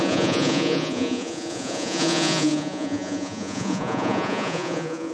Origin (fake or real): fake